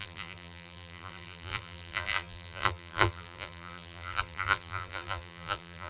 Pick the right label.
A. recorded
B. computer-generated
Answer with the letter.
B